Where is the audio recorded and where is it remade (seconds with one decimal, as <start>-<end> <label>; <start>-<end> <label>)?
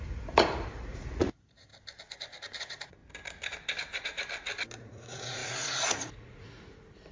0.0-1.7 remade; 1.7-2.6 recorded; 2.6-3.0 remade; 3.0-4.8 recorded; 4.8-7.1 remade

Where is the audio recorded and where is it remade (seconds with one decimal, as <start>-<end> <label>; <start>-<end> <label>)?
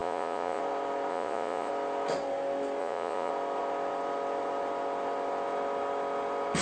0.0-0.6 remade; 0.6-1.1 recorded; 1.1-1.7 remade; 1.7-2.8 recorded; 2.8-3.3 remade; 3.3-6.6 recorded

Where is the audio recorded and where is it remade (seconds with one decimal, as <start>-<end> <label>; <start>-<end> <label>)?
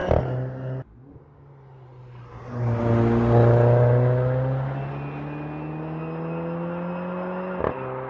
0.0-8.1 recorded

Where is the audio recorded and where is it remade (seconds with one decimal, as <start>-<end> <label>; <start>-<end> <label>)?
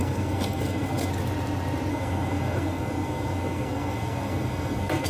0.0-1.1 remade; 1.1-1.9 recorded; 1.9-5.1 remade